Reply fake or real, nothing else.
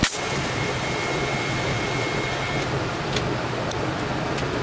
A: real